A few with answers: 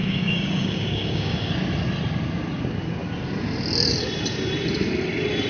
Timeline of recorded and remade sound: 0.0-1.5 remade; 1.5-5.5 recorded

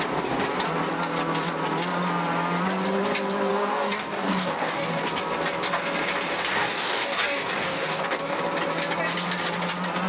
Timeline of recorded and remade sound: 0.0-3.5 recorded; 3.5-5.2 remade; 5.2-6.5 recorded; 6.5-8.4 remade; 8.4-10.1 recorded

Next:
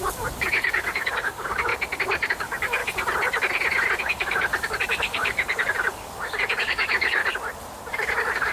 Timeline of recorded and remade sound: 0.0-1.7 remade; 1.7-2.3 recorded; 2.3-2.8 remade; 2.8-4.0 recorded; 4.0-7.2 remade; 7.2-7.9 recorded; 7.9-8.5 remade

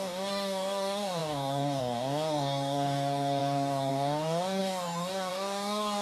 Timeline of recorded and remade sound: 0.0-6.0 remade

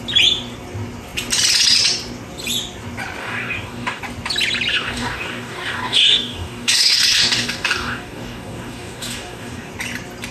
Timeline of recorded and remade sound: 0.0-3.2 recorded; 3.2-4.0 remade; 4.0-4.7 recorded; 4.7-9.7 remade; 9.7-10.3 recorded

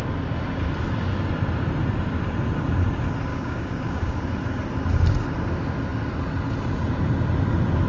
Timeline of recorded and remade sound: 0.0-3.3 recorded; 3.3-4.2 remade; 4.2-7.9 recorded

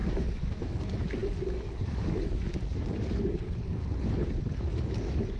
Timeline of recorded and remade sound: 0.0-3.8 remade; 3.8-4.6 recorded; 4.6-5.4 remade

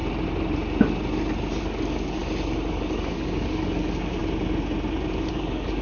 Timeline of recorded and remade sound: 0.0-1.6 recorded; 1.6-2.2 remade; 2.2-2.7 recorded; 2.7-4.2 remade; 4.2-5.3 recorded; 5.3-5.8 remade